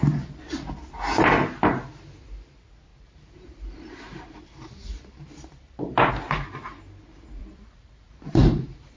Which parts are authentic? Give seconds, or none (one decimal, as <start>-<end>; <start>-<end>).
0.0-2.9; 6.1-7.4